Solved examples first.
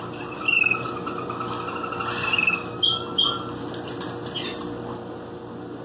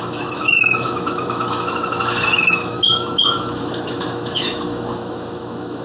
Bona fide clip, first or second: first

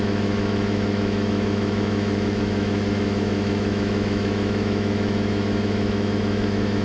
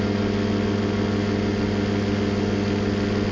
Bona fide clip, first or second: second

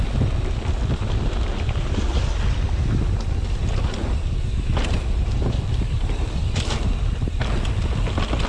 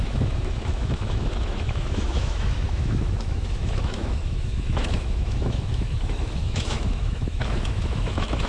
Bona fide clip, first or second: first